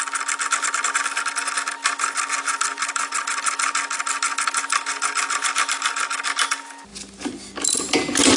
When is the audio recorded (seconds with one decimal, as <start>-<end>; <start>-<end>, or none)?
0.0-8.4